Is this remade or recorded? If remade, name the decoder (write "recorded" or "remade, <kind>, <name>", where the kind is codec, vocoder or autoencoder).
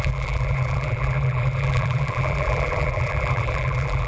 remade, vocoder, BigVGAN v2